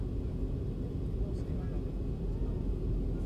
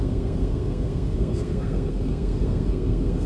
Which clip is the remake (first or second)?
second